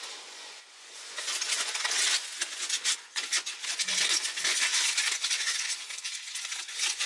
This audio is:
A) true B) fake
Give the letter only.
B